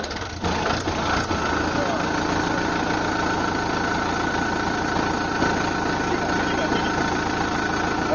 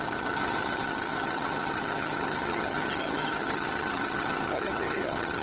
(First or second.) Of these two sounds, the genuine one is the first